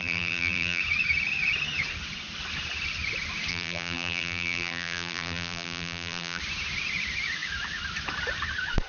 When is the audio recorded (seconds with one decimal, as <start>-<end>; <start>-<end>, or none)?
0.8-3.5; 6.4-8.9